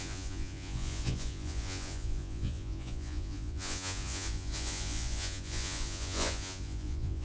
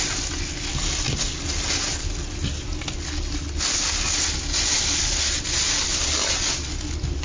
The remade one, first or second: first